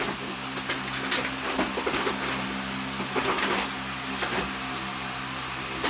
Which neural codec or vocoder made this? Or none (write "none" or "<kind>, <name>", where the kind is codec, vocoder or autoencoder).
none